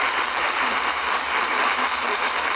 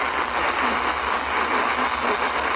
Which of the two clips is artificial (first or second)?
first